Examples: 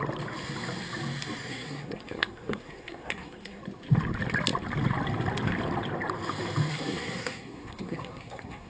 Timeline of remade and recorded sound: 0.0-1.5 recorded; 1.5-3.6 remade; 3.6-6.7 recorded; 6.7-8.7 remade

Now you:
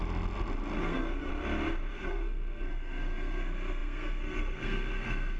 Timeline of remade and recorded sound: 0.0-0.8 recorded; 0.8-1.3 remade; 1.3-1.9 recorded; 1.9-5.4 remade

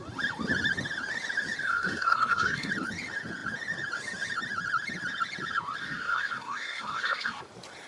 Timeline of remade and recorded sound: 0.0-1.6 recorded; 1.6-2.7 remade; 2.7-5.8 recorded; 5.8-7.4 remade; 7.4-7.9 recorded

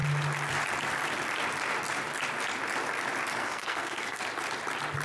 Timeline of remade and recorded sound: 0.0-3.4 recorded; 3.4-4.2 remade; 4.2-5.0 recorded

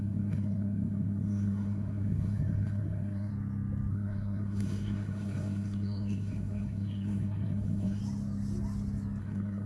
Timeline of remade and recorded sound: 0.0-3.3 remade; 3.3-3.9 recorded; 3.9-8.0 remade; 8.0-9.2 recorded; 9.2-9.7 remade

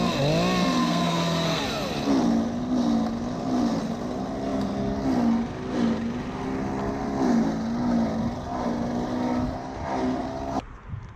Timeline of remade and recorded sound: 0.0-0.8 recorded; 0.8-1.6 remade; 1.6-11.2 recorded

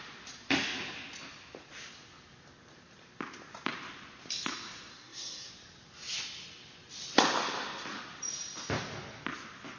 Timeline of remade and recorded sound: 0.0-4.9 recorded; 4.9-5.5 remade; 5.5-9.8 recorded

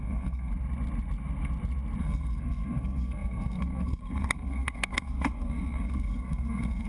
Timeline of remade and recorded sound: 0.0-0.5 remade; 0.5-2.0 recorded; 2.0-6.9 remade